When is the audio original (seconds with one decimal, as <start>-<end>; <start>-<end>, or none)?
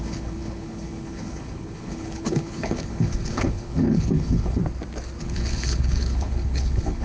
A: 4.6-5.2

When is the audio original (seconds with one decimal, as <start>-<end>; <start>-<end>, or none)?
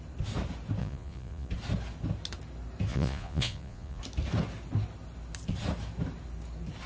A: 0.0-0.8; 1.5-2.9; 4.0-6.9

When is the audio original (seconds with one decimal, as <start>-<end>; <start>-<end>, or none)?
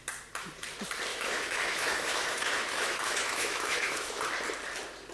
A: 0.0-1.1; 4.2-5.1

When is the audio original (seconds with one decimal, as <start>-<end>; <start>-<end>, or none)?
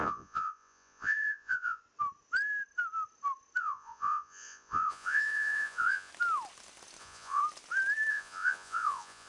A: 1.8-3.6; 6.1-7.0; 7.4-8.1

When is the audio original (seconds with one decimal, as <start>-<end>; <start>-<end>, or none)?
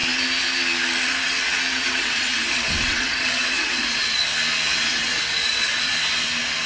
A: 0.0-1.7; 4.2-4.7; 5.9-6.7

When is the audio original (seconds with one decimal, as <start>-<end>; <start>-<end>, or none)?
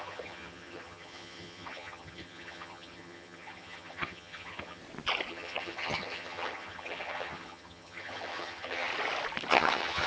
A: 4.8-5.3; 8.9-9.5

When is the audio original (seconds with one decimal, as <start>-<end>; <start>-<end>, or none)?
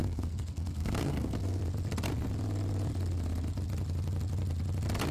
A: 1.6-5.1